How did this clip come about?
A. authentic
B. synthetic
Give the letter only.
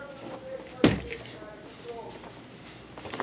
A